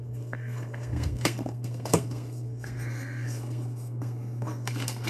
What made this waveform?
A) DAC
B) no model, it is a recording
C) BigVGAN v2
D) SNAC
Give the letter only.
D